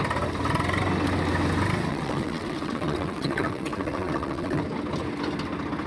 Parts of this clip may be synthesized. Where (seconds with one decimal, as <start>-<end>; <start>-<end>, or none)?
1.9-4.6